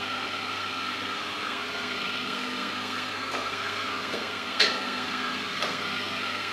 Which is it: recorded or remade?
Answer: remade